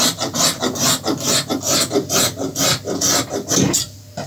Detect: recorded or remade recorded